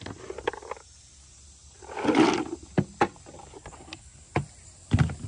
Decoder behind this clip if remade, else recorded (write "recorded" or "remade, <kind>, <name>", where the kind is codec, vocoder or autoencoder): recorded